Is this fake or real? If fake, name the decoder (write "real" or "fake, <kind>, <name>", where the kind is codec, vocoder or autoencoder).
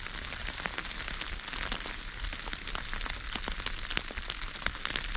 real